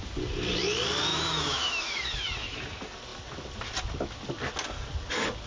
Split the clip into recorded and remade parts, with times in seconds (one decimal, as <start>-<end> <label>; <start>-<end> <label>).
0.0-1.1 recorded; 1.1-2.6 remade; 2.6-5.5 recorded